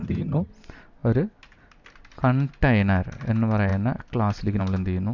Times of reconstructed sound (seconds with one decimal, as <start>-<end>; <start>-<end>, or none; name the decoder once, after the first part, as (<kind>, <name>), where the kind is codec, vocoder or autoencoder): 0.0-0.5 (vocoder, HiFi-GAN)